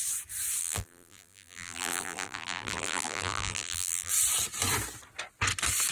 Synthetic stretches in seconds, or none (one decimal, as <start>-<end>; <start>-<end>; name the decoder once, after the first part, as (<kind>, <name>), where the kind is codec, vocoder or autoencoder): 0.6-4.1 (vocoder, BigVGAN v2)